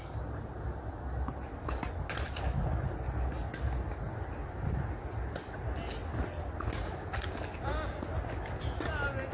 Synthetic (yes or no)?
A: no